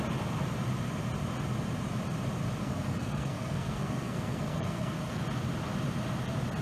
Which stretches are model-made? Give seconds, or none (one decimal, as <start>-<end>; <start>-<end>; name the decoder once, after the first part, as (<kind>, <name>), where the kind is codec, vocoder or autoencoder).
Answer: 2.6-5.2 (codec, SNAC)